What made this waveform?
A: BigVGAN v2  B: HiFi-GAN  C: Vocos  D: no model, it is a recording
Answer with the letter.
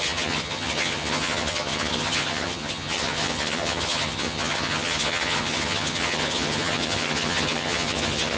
B